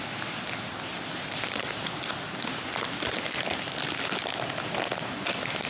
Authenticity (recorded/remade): recorded